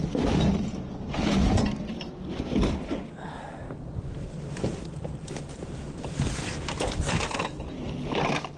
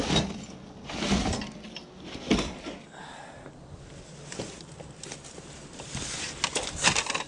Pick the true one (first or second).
second